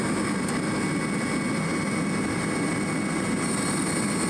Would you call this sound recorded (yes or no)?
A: yes